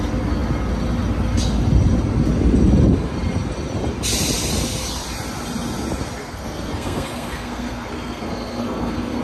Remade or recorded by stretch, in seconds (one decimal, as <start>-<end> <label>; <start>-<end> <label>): 0.0-6.2 recorded; 6.2-9.2 remade